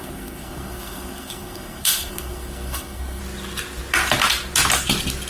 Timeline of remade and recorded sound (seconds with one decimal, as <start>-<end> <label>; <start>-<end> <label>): 0.0-3.2 remade; 3.2-5.3 recorded